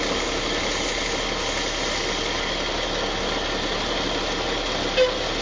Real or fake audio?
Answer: real